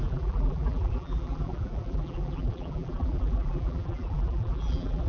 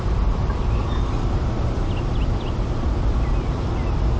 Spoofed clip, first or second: first